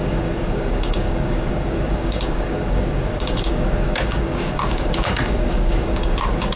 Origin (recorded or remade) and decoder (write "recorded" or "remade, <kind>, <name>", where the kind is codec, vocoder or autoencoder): remade, codec, DAC